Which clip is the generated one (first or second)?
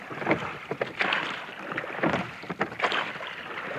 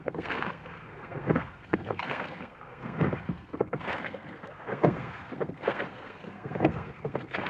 second